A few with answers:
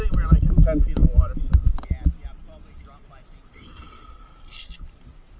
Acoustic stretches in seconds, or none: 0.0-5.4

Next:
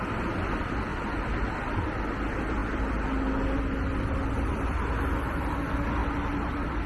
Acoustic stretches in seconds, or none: 0.0-6.9

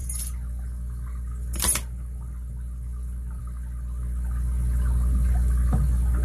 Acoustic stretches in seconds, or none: 0.0-6.2